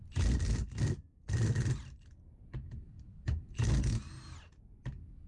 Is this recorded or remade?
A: recorded